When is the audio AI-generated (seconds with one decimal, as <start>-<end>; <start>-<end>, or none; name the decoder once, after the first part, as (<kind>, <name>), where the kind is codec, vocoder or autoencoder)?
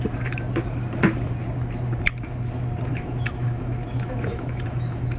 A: 2.9-5.2 (autoencoder, DAC-VAE)